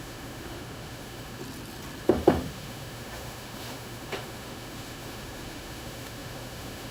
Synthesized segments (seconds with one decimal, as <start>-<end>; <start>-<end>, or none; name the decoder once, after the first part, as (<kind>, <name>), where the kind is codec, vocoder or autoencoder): 0.0-1.4 (autoencoder, DAC-VAE); 2.0-6.9